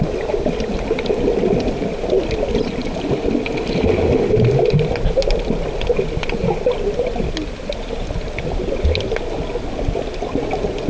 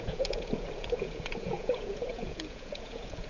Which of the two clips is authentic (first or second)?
first